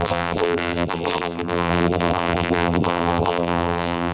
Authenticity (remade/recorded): remade